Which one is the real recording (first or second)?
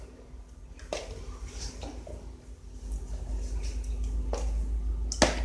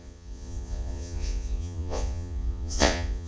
first